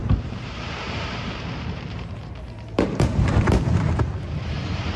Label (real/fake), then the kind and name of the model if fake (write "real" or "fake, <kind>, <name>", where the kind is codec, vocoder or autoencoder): fake, vocoder, BigVGAN v2